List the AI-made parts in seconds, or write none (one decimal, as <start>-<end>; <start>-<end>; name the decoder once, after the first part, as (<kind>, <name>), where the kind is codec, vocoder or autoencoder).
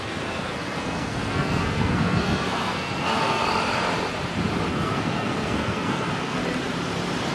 0.0-3.4 (codec, SNAC); 4.7-6.4